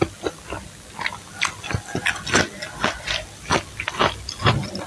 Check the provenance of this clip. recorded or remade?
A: recorded